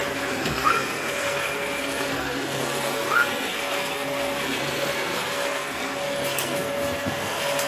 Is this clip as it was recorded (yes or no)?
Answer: no